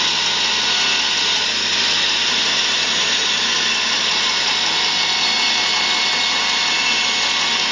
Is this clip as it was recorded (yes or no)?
yes